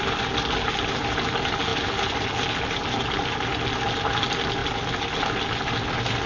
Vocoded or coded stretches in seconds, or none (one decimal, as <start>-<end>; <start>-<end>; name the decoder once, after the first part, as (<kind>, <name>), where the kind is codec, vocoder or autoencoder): none

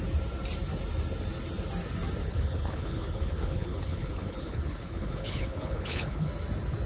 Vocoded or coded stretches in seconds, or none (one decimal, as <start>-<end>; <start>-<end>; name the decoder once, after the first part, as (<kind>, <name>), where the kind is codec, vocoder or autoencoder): 2.2-6.3 (codec, HILCodec)

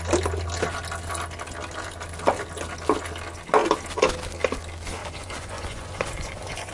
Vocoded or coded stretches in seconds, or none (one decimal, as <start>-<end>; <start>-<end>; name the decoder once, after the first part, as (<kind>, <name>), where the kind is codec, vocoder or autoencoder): 5.0-6.7 (vocoder, Vocos)

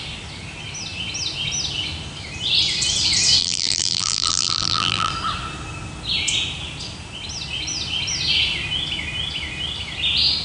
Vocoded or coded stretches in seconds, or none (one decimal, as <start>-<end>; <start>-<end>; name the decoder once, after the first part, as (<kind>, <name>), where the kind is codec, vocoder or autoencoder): 3.4-5.1 (vocoder, BigVGAN v2)

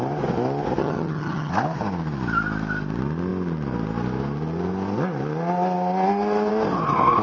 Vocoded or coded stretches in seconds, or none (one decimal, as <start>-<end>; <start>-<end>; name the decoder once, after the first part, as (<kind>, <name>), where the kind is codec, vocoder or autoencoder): 0.8-1.5 (vocoder, HiFi-GAN)